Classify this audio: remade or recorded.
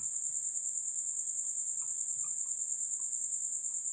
recorded